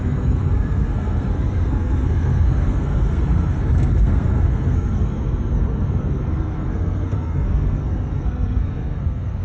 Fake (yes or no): yes